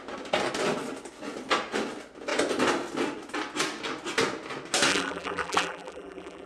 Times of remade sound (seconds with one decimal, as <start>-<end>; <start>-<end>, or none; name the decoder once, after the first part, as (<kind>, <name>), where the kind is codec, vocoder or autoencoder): 4.9-6.5 (vocoder, BigVGAN v2)